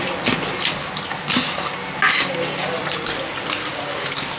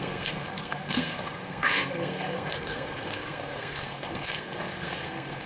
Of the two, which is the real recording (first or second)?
first